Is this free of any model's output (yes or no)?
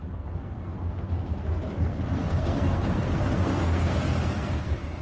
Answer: no